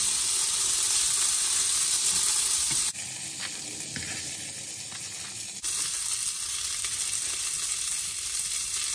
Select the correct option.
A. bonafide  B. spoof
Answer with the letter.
A